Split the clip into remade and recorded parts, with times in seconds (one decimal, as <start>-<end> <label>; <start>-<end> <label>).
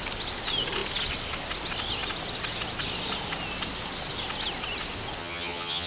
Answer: 0.0-5.2 recorded; 5.2-5.9 remade